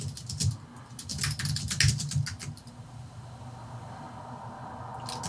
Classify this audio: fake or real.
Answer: real